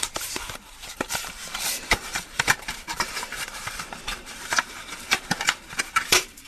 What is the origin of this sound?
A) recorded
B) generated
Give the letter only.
B